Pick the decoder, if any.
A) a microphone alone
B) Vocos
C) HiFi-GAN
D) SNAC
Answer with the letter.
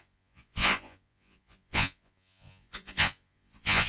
B